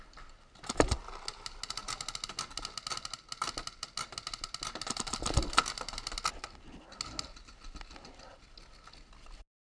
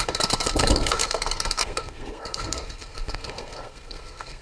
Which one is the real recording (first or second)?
first